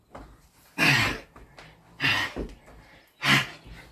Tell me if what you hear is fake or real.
real